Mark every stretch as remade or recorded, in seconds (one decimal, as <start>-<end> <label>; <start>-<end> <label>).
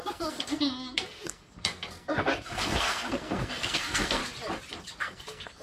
0.0-4.2 remade; 4.2-5.0 recorded; 5.0-5.6 remade